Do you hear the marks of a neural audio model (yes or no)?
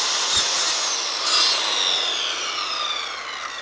no